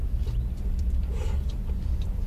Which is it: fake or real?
real